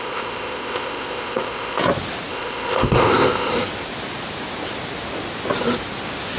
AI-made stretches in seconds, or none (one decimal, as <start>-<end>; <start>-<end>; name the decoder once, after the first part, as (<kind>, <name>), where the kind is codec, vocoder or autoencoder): 0.0-1.8 (codec, ZipCodec); 2.3-3.5

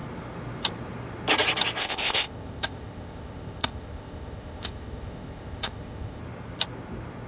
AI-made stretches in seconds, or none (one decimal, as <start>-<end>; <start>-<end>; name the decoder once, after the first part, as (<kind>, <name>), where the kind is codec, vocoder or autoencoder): 1.8-6.2 (codec, ZipCodec)

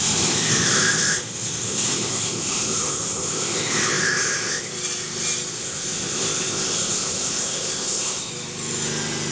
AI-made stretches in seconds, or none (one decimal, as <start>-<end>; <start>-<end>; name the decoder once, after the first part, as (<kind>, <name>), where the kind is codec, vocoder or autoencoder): 0.0-4.7 (codec, ZipCodec); 5.5-8.3

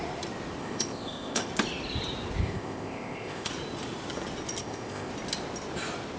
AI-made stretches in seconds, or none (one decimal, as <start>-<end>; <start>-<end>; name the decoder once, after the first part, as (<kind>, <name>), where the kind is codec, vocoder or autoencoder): 0.6-1.5 (codec, ZipCodec); 2.4-3.5; 4.6-5.1

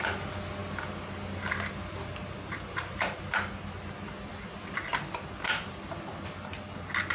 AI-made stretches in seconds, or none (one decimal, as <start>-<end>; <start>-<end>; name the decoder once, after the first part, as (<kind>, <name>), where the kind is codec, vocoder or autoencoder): none

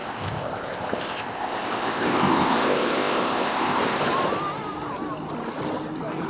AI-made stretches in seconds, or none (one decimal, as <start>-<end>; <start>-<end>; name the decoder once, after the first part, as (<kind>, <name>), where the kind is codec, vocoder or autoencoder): 0.0-3.8 (codec, ZipCodec)

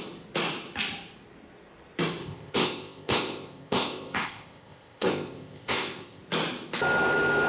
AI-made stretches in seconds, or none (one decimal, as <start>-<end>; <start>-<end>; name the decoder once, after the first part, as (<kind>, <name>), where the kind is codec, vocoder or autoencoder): 2.2-6.2 (codec, ZipCodec)

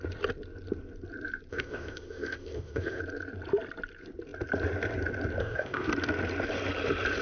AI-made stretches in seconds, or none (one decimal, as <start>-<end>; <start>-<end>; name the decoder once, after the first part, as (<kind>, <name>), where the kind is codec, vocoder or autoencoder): 1.5-3.0 (codec, ZipCodec); 5.4-5.9